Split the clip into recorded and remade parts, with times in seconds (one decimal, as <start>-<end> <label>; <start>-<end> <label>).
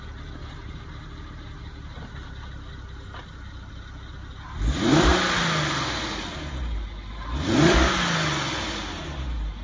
0.0-9.6 recorded